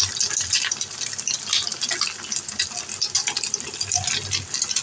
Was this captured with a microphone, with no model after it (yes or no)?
yes